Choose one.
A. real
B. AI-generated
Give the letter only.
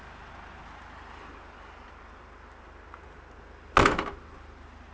A